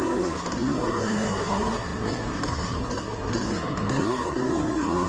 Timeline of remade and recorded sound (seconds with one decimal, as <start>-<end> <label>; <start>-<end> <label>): 0.0-5.1 remade